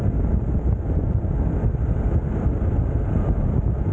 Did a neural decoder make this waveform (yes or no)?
no